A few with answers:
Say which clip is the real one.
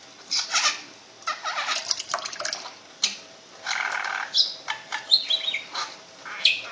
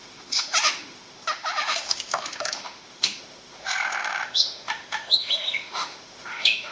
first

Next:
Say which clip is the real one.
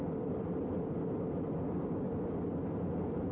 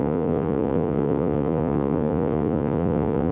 first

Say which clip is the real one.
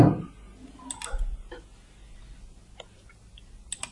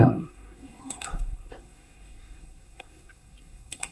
first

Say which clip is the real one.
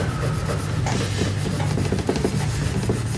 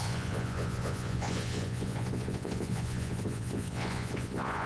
first